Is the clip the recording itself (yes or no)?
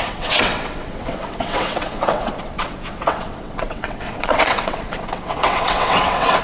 no